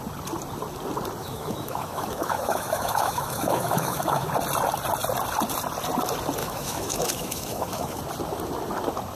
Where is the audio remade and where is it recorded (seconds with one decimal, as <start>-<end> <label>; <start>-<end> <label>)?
0.0-1.2 recorded; 1.2-4.3 remade; 4.3-6.4 recorded; 6.4-8.0 remade; 8.0-9.1 recorded